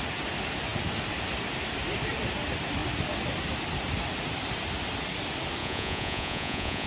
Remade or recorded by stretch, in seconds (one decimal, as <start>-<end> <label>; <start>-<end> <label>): 0.0-5.6 recorded; 5.6-6.9 remade

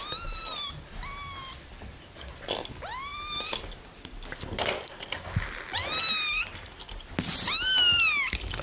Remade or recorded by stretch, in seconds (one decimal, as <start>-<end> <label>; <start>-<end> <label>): 0.0-8.6 recorded

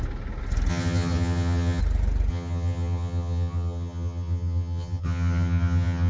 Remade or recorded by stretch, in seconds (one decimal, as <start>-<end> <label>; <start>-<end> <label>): 0.0-0.7 recorded; 0.7-1.8 remade; 1.8-2.3 recorded; 2.3-6.1 remade

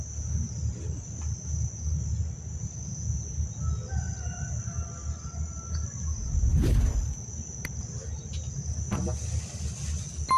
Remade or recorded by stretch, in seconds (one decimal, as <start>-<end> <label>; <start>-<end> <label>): 0.0-10.4 recorded

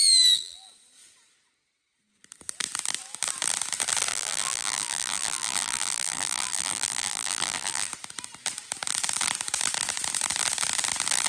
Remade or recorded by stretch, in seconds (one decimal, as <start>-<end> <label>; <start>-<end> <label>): 0.0-0.7 remade; 0.7-4.1 recorded; 4.1-7.9 remade; 7.9-11.3 recorded

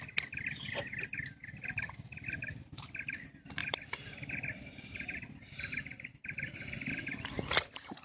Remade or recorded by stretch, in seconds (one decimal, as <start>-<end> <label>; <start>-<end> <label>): 0.0-3.6 recorded; 3.6-8.0 remade

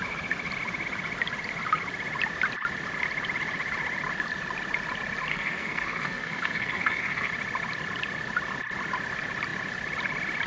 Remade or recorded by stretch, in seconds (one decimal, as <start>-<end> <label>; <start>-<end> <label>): 0.0-5.3 recorded; 5.3-7.3 remade; 7.3-10.5 recorded